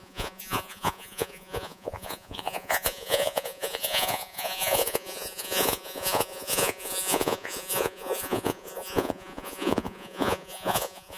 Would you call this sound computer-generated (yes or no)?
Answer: yes